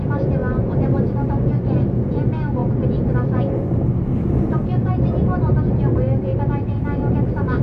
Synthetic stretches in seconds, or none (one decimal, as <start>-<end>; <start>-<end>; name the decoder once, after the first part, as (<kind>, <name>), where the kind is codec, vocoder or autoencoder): none